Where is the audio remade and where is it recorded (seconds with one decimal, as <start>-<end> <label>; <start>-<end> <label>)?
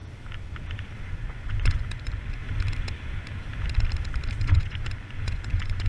0.0-1.1 recorded; 1.1-2.4 remade; 2.4-4.4 recorded; 4.4-5.9 remade